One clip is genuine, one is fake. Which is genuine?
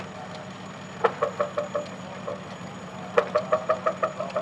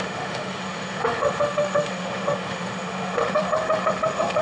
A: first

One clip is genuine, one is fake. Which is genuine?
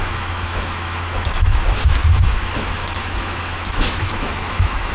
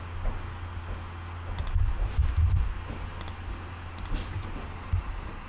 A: second